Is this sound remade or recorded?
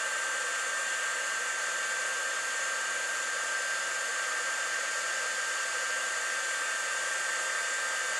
recorded